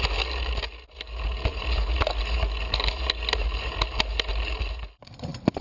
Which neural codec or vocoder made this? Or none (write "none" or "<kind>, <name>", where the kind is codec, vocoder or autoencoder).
none